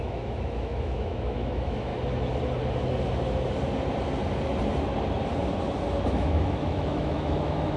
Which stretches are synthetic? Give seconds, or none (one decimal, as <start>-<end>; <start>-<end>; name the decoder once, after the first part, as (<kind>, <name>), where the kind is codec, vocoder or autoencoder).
0.0-1.9 (autoencoder, DAC-VAE); 6.1-7.8